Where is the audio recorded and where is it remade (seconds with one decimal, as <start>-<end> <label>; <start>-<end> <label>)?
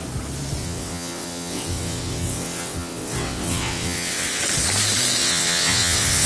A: 0.0-0.6 recorded; 0.6-4.4 remade; 4.4-5.2 recorded; 5.2-6.3 remade